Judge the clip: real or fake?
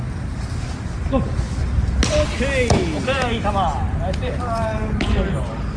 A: real